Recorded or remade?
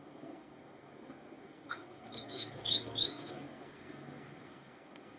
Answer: remade